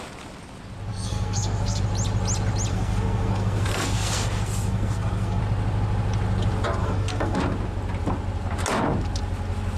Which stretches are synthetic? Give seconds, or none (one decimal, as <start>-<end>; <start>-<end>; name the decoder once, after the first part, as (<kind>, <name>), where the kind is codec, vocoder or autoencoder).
0.9-1.8 (codec, SNAC); 2.7-5.4; 6.8-7.4